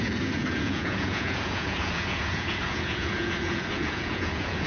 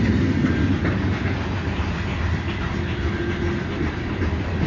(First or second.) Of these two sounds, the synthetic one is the first